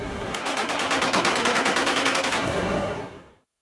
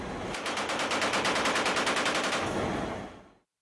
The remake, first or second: first